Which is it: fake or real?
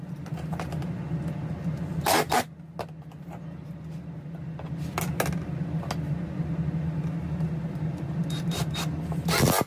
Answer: real